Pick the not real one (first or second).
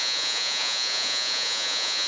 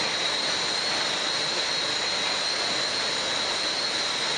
first